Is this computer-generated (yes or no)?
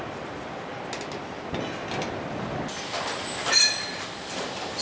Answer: no